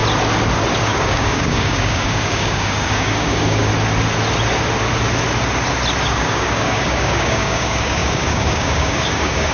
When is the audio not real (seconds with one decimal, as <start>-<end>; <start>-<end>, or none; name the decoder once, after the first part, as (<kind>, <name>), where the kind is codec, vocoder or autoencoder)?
0.8-3.7 (codec, DAC); 6.0-9.5